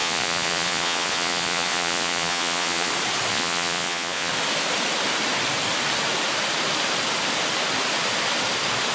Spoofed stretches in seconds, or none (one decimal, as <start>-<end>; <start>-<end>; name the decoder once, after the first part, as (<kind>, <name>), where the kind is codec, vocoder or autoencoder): 0.0-2.9 (vocoder, Vocos); 3.3-4.3